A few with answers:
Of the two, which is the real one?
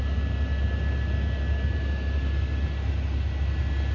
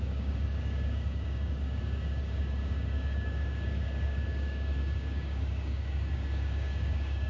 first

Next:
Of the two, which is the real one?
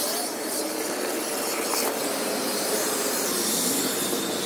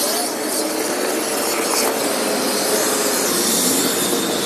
second